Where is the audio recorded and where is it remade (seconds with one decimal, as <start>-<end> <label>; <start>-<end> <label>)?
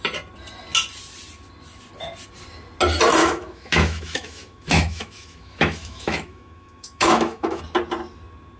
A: 0.0-3.2 recorded; 3.2-7.6 remade; 7.6-8.6 recorded